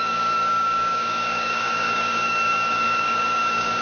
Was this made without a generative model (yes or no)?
no